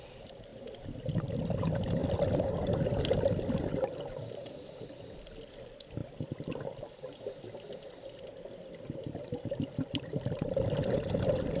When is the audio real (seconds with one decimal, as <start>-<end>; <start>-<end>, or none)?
2.0-3.0; 6.0-9.5